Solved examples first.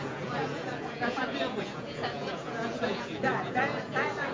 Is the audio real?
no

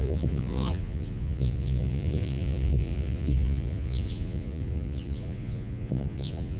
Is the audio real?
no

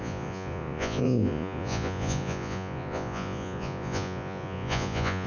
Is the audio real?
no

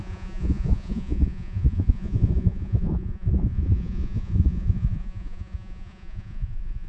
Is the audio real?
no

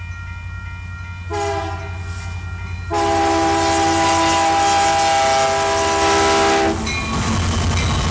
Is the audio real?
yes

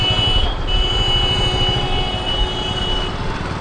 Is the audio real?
yes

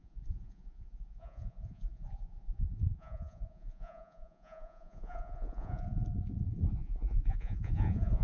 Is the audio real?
no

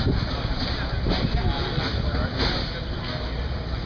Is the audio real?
yes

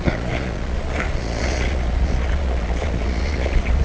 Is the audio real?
no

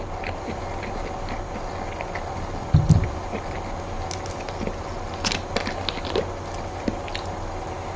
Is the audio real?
yes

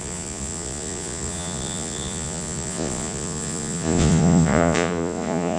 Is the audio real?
no